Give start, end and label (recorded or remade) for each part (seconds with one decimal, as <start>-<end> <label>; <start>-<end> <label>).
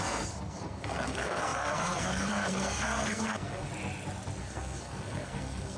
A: 0.0-3.7 remade; 3.7-4.4 recorded; 4.4-5.8 remade